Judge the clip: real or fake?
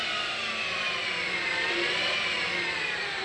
real